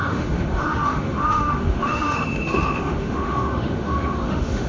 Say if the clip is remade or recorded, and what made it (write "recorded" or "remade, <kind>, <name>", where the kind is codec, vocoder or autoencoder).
remade, autoencoder, DAC-VAE